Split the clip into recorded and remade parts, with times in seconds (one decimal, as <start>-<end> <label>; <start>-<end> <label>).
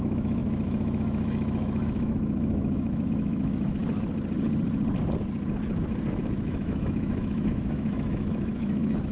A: 0.0-3.8 remade; 3.8-6.2 recorded; 6.2-9.1 remade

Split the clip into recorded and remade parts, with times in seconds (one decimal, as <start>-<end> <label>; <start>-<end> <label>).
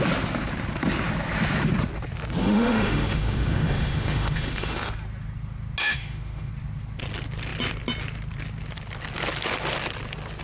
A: 0.0-2.4 recorded; 2.4-4.9 remade; 4.9-5.8 recorded; 5.8-6.5 remade; 6.5-10.4 recorded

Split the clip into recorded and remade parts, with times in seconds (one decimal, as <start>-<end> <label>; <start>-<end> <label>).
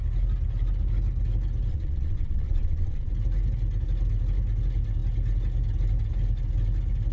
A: 0.0-1.7 recorded; 1.7-3.1 remade; 3.1-7.1 recorded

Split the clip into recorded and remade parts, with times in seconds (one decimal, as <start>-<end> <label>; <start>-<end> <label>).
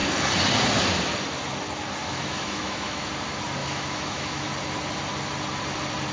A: 0.0-2.0 recorded; 2.0-3.1 remade; 3.1-3.6 recorded; 3.6-4.5 remade; 4.5-6.1 recorded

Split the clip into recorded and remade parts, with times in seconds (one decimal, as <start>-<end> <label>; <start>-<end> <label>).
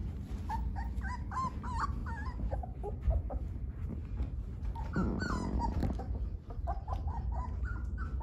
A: 0.0-2.0 recorded; 2.0-3.4 remade; 3.4-5.8 recorded; 5.8-6.9 remade; 6.9-8.2 recorded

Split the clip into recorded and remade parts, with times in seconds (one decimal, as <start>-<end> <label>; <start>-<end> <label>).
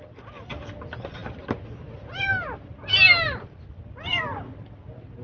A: 0.0-5.2 recorded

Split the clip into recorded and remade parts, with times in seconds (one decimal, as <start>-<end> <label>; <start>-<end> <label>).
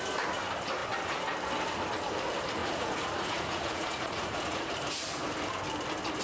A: 0.0-2.6 recorded; 2.6-4.7 remade; 4.7-6.2 recorded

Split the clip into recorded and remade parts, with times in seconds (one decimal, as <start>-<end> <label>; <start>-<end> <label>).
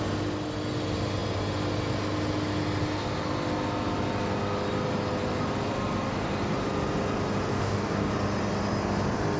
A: 0.0-7.5 recorded; 7.5-8.1 remade; 8.1-9.4 recorded